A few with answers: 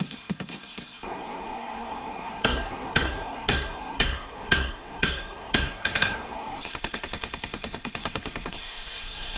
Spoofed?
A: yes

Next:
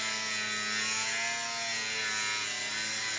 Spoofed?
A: no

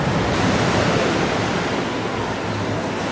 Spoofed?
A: no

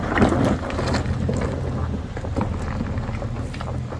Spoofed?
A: no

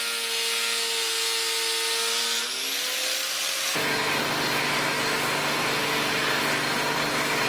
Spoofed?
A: no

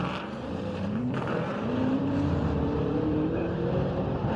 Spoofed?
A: yes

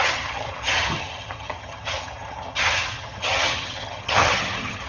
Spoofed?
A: yes